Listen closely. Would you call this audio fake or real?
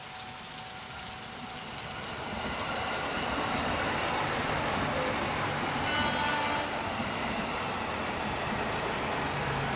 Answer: real